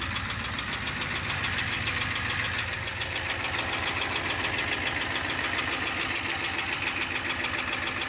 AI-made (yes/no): no